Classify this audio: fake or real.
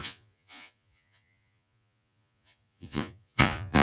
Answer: fake